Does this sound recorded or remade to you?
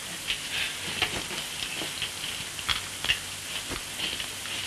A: recorded